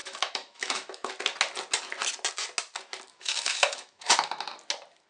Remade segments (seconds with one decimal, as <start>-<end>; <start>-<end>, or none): 0.0-1.1; 3.1-4.1